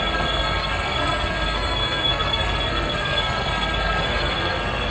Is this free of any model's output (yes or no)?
no